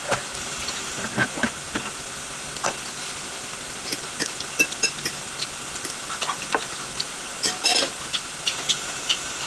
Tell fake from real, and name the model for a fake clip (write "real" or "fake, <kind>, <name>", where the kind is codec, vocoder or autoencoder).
real